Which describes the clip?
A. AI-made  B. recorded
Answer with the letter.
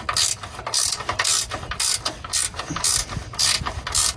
B